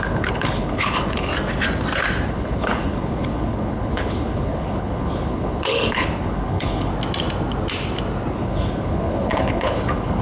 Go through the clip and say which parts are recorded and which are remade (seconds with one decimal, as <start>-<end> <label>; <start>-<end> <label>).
0.0-1.3 remade; 1.3-2.3 recorded; 2.3-6.9 remade; 6.9-8.3 recorded; 8.3-10.2 remade